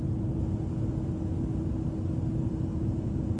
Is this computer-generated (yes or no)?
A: no